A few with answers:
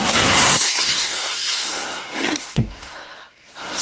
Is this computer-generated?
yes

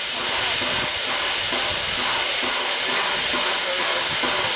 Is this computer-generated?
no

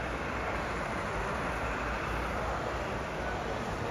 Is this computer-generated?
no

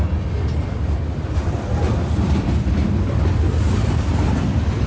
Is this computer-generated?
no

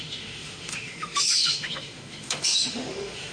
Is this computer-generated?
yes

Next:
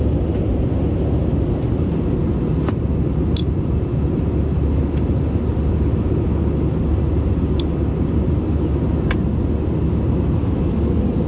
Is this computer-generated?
no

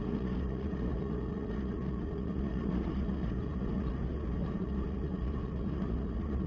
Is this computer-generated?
yes